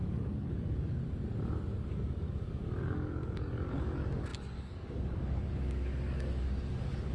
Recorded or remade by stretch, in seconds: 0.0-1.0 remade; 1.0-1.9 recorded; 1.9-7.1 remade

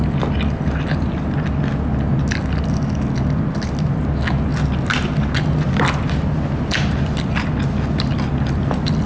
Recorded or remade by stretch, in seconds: 0.0-9.1 recorded

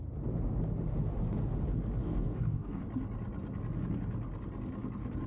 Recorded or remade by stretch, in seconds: 0.0-2.0 recorded; 2.0-2.8 remade; 2.8-5.3 recorded

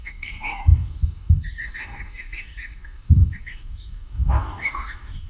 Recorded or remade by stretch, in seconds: 0.0-5.3 remade

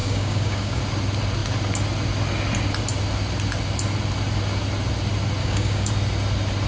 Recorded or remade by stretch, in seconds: 0.0-0.8 remade; 0.8-5.4 recorded; 5.4-5.9 remade; 5.9-6.7 recorded

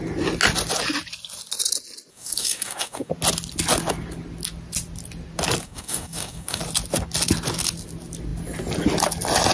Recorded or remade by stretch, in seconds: 0.0-2.1 recorded; 2.1-3.1 remade; 3.1-5.6 recorded; 5.6-6.6 remade; 6.6-9.5 recorded

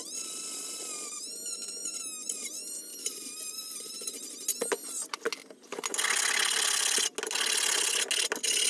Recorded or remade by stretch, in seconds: 0.0-8.7 recorded

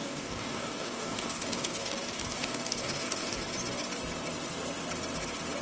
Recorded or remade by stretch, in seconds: 0.0-3.4 remade; 3.4-5.6 recorded